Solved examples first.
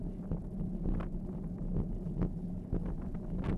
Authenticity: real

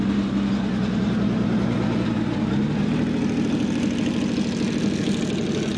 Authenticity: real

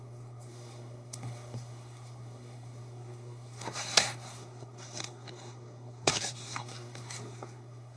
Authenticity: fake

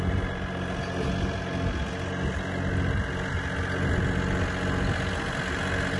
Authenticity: real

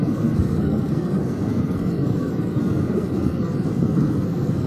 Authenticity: fake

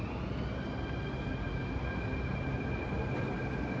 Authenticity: real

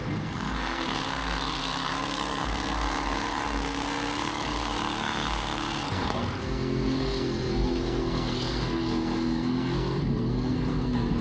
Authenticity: fake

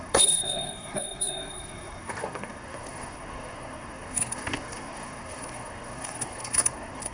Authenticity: fake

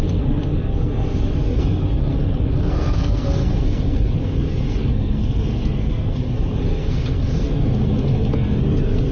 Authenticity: fake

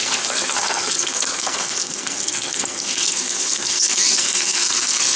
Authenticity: fake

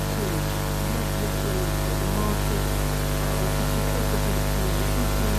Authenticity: real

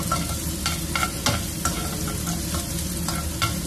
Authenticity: real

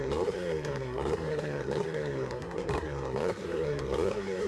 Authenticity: fake